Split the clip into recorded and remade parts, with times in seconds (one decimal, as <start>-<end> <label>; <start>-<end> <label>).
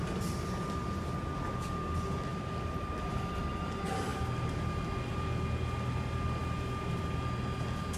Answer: 0.0-2.3 recorded; 2.3-3.4 remade; 3.4-8.0 recorded